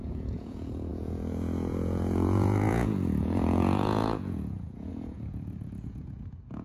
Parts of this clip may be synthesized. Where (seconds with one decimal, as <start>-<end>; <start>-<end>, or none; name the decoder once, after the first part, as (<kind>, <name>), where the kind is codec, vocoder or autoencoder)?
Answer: 0.0-6.6 (vocoder, Vocos)